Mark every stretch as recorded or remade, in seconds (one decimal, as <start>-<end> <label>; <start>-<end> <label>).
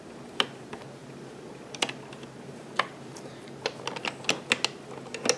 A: 0.0-1.0 recorded; 1.0-3.8 remade; 3.8-5.4 recorded